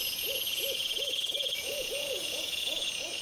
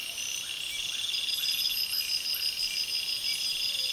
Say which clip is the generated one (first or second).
first